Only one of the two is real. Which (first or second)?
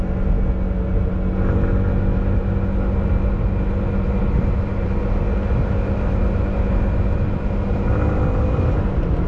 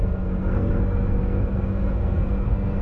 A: first